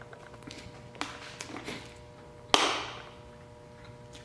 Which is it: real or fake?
real